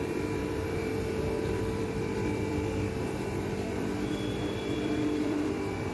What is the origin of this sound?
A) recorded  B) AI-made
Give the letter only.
B